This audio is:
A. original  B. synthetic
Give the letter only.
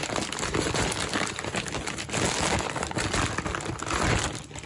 A